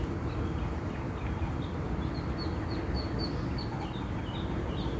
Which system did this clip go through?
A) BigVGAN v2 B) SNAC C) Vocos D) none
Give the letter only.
D